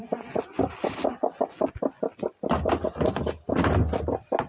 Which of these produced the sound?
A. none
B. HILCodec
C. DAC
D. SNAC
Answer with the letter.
A